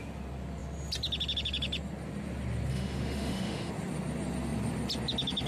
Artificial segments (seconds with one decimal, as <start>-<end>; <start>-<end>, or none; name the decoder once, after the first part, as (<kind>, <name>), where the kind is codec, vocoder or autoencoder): 2.7-3.7 (autoencoder, DAC-VAE)